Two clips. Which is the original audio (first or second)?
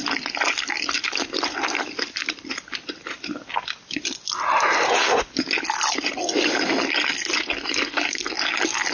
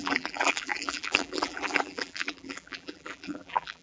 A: first